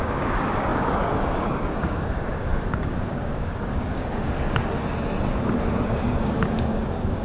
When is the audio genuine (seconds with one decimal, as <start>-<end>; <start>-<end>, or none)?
4.6-5.3